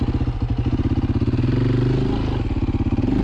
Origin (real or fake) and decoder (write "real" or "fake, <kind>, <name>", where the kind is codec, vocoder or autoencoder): real